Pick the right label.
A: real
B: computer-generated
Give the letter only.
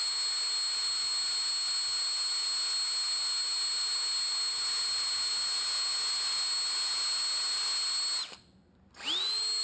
A